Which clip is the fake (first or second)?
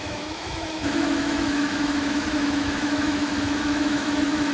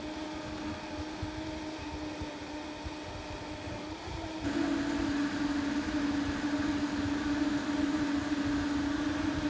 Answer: first